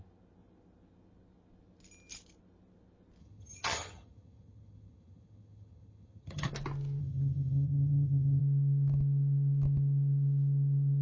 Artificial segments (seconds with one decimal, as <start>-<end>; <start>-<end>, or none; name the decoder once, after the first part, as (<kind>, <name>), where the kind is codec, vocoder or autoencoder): 3.2-6.5 (vocoder, HiFi-GAN); 7.0-8.4